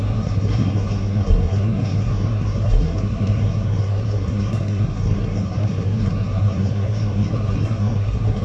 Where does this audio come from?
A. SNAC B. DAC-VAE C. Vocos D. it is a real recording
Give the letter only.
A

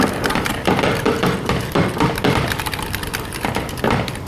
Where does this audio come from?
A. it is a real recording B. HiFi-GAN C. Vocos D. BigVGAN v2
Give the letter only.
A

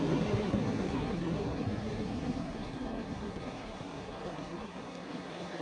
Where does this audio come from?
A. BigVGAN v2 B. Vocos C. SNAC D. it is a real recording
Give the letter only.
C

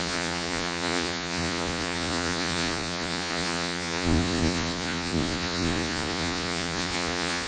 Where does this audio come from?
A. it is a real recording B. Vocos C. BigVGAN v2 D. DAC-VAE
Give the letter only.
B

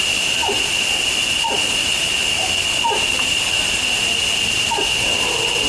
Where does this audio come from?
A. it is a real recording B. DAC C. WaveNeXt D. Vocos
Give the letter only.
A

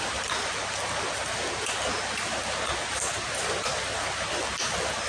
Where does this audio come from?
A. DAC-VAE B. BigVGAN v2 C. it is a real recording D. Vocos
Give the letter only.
C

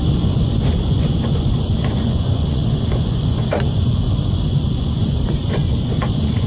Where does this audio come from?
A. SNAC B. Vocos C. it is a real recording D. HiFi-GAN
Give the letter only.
B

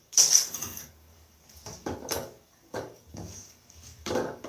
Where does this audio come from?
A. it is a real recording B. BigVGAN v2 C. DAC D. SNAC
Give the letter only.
C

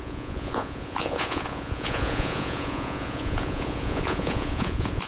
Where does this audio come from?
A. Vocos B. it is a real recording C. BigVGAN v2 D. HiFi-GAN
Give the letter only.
A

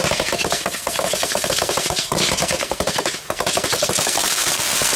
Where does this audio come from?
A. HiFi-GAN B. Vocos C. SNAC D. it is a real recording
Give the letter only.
C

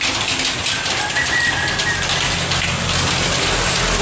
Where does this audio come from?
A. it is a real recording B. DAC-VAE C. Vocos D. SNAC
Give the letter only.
A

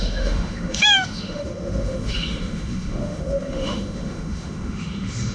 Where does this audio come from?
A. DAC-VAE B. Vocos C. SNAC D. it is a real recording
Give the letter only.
A